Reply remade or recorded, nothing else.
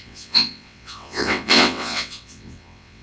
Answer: remade